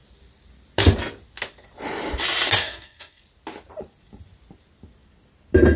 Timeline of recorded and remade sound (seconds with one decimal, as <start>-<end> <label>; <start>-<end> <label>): 0.0-2.6 recorded; 2.6-3.2 remade; 3.2-5.8 recorded